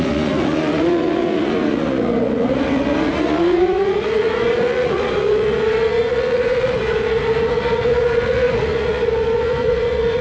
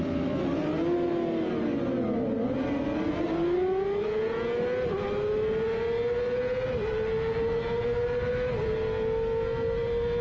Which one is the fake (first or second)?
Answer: first